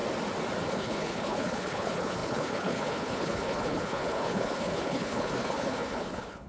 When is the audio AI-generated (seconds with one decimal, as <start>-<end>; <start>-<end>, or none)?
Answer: 0.7-6.5